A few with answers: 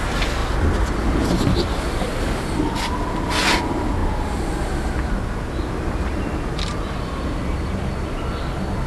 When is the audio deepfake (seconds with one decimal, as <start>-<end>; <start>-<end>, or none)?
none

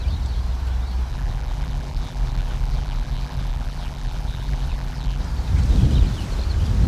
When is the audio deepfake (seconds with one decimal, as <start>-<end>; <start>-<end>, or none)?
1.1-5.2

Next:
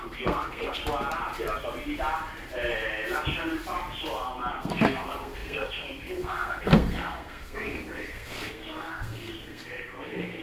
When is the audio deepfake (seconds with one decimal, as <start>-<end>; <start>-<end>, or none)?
0.0-0.8; 4.5-10.4